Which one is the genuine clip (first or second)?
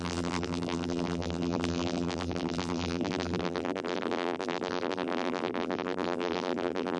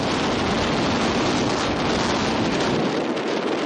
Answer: second